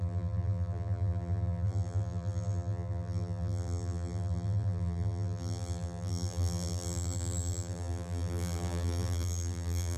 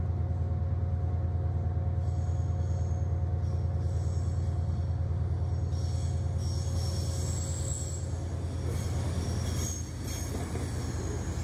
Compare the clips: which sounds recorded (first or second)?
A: second